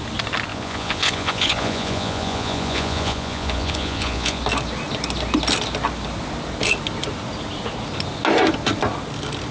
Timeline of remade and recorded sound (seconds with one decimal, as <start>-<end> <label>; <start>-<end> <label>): 0.0-0.5 recorded; 0.5-4.4 remade; 4.4-9.5 recorded